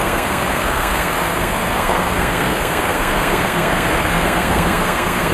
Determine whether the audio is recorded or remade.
remade